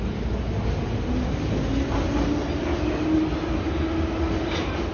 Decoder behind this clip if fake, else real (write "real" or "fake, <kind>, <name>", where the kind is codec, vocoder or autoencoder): real